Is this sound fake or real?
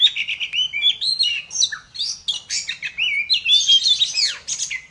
real